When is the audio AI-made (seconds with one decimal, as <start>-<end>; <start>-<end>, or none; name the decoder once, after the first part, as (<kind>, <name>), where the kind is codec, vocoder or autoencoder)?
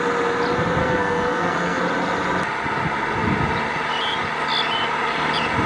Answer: 0.8-1.8 (codec, SNAC)